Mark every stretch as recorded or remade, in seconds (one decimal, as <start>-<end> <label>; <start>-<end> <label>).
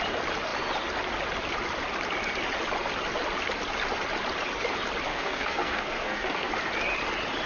0.0-5.1 recorded; 5.1-6.5 remade; 6.5-7.5 recorded